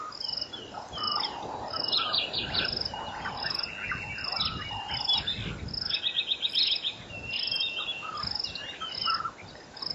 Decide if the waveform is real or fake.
real